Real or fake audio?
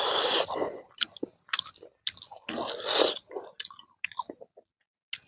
real